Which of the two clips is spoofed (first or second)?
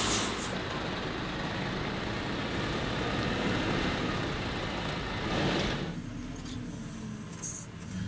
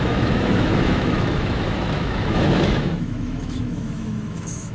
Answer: second